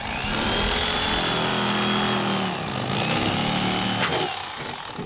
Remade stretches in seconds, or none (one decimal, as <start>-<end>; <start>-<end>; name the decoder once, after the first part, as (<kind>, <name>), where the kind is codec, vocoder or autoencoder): none

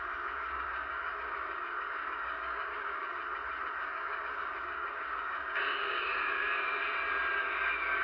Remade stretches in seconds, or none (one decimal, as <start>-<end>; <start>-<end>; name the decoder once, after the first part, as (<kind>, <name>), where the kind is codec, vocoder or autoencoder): 0.0-3.2 (codec, DAC); 3.8-6.8; 7.4-8.0

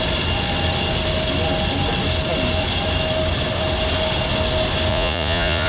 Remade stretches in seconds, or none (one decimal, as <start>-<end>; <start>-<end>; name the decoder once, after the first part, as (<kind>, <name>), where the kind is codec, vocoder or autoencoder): 4.9-5.7 (vocoder, Vocos)